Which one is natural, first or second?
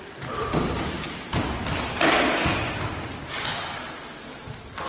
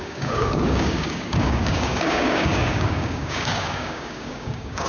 first